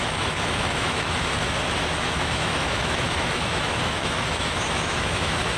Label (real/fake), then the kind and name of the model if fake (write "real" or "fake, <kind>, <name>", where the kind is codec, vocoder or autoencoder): fake, autoencoder, DAC-VAE